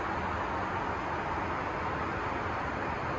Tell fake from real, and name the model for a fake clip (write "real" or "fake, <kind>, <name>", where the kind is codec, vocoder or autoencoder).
real